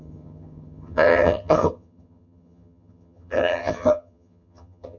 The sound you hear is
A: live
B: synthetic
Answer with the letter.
B